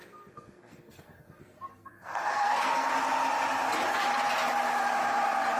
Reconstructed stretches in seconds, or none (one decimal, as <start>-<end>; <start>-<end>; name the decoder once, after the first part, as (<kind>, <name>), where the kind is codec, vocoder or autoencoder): 0.0-2.9 (codec, SNAC)